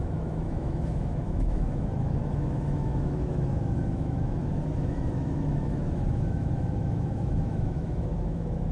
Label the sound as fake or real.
fake